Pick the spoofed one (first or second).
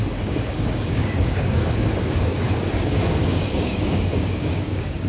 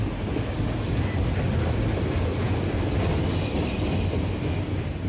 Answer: first